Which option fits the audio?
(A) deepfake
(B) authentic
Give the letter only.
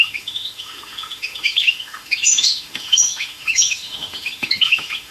A